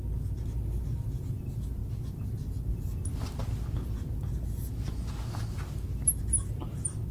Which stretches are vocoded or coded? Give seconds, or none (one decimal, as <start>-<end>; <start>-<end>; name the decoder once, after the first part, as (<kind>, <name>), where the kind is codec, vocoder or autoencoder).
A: none